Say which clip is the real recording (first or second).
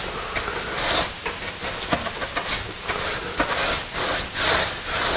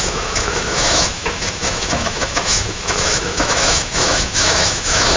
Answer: first